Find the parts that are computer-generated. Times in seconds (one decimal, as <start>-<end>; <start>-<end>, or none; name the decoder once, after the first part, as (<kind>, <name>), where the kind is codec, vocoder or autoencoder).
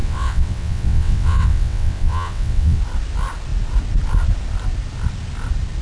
0.0-2.8 (vocoder, WaveNeXt)